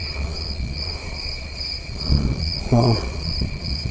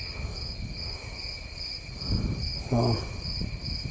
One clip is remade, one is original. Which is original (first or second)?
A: second